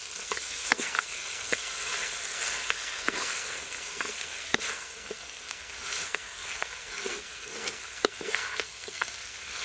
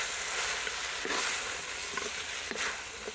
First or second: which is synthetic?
first